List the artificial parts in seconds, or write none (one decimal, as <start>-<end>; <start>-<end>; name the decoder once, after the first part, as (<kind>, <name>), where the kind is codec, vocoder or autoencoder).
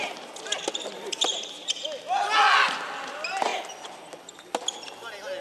none